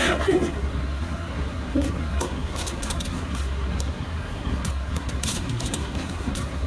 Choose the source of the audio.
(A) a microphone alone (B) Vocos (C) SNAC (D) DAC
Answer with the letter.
C